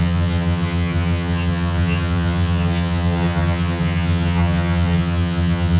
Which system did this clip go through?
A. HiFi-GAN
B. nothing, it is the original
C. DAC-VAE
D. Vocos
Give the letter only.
A